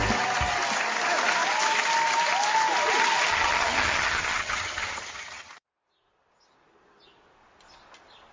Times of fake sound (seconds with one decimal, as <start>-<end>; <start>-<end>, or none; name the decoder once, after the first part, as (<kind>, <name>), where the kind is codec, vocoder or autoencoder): 3.3-5.5 (vocoder, HiFi-GAN)